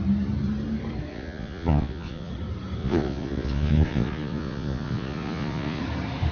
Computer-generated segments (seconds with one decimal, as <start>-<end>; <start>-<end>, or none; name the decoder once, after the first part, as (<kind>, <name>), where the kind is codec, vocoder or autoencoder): 1.1-2.3 (vocoder, Vocos); 2.8-5.8